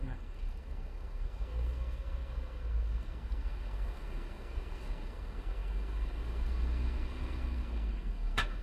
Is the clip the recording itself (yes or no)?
no